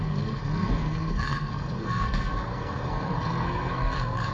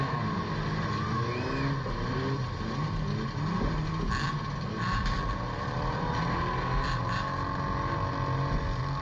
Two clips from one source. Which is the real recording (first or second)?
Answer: second